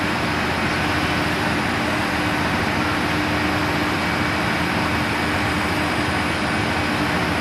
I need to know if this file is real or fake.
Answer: real